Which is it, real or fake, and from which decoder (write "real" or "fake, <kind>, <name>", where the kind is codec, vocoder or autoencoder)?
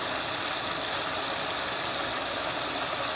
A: real